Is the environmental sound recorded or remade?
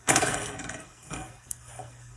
remade